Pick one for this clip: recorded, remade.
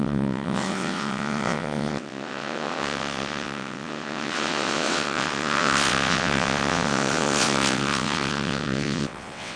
remade